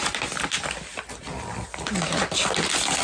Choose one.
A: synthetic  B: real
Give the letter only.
B